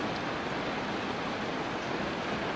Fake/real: real